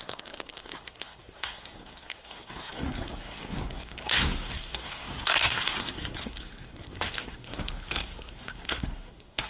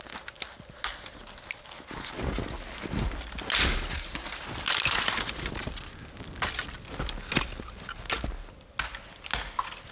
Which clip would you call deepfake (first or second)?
first